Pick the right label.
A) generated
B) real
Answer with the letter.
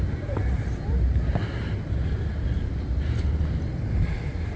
B